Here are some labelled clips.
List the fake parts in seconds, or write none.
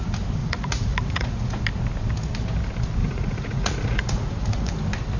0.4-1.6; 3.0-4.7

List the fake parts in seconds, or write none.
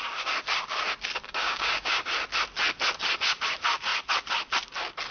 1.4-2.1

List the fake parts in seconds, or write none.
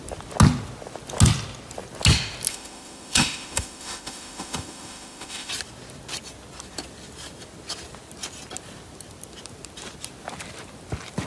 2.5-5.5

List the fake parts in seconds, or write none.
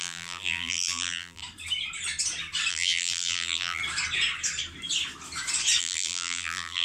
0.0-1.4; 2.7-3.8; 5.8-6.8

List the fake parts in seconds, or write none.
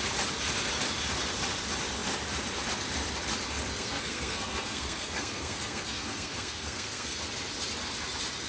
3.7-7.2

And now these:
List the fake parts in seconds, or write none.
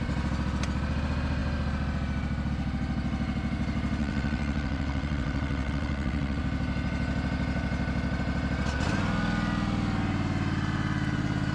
4.0-6.4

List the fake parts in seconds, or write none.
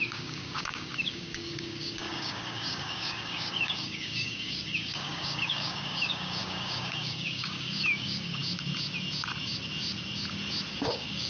0.0-8.4; 10.7-11.3